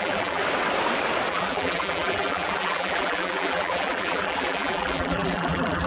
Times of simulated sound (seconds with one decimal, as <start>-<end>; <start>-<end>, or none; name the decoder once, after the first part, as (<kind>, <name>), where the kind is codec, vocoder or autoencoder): 0.0-0.4 (vocoder, BigVGAN v2); 1.3-5.9